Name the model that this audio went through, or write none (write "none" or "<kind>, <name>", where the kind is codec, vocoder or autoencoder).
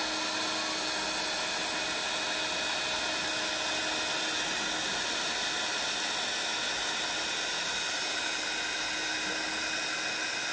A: none